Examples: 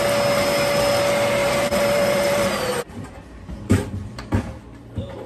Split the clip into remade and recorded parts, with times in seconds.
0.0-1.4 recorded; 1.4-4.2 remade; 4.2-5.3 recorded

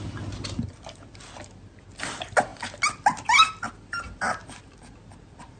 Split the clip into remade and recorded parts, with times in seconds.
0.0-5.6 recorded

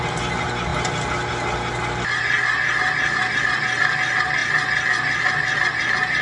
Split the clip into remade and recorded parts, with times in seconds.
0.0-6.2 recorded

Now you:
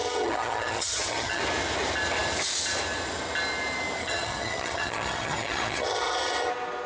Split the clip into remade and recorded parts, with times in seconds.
0.0-1.4 remade; 1.4-4.0 recorded; 4.0-6.5 remade; 6.5-6.9 recorded

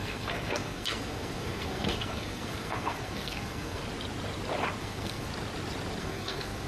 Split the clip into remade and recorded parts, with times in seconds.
0.0-3.8 remade; 3.8-4.8 recorded; 4.8-5.3 remade; 5.3-6.0 recorded; 6.0-6.7 remade